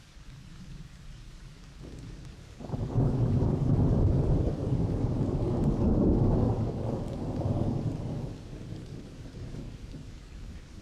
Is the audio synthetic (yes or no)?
yes